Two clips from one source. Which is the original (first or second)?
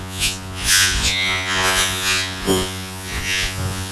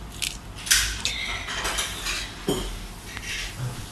second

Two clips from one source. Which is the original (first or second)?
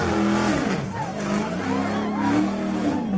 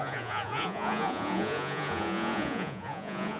first